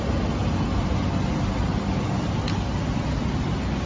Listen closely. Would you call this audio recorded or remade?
recorded